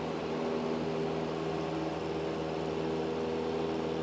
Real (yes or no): yes